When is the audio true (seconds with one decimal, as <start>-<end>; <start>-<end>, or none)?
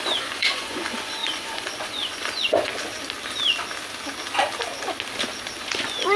2.7-5.6